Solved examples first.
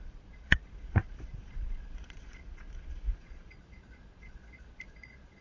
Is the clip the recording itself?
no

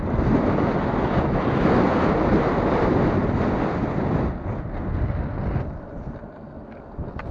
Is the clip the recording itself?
yes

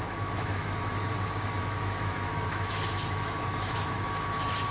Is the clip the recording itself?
no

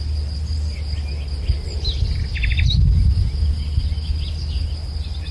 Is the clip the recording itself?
yes